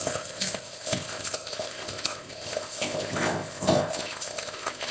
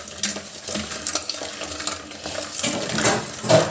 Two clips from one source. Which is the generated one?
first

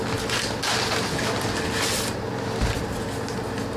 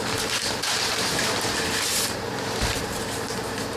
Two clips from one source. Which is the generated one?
second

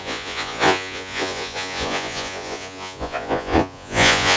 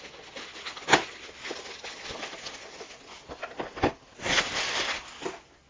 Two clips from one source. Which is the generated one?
first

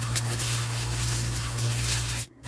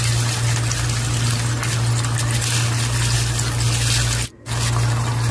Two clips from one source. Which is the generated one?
first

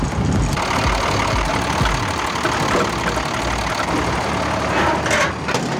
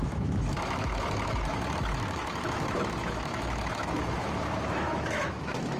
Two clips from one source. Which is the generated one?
second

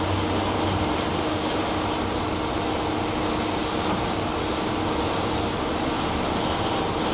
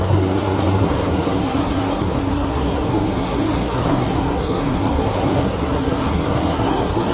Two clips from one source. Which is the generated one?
second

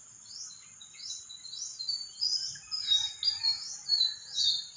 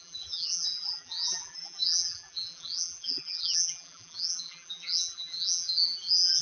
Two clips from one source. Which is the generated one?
second